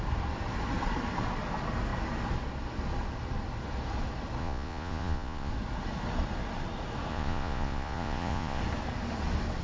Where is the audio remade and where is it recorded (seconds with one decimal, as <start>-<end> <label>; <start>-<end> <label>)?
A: 0.0-4.4 recorded; 4.4-5.5 remade; 5.5-7.1 recorded; 7.1-8.6 remade; 8.6-9.6 recorded

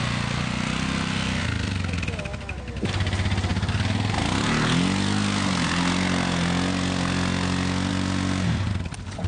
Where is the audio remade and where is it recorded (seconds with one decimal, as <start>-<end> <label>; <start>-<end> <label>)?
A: 0.0-9.3 recorded

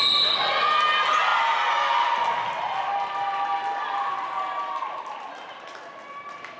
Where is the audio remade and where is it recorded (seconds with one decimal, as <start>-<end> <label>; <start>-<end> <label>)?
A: 0.0-6.6 recorded